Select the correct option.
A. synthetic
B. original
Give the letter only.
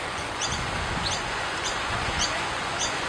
A